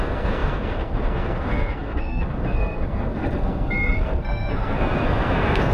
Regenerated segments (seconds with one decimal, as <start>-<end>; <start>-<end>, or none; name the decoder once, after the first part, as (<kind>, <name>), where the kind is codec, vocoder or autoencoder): 0.0-5.7 (codec, SNAC)